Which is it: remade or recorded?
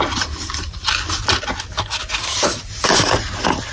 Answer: recorded